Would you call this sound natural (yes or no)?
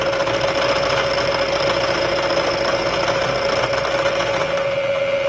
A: yes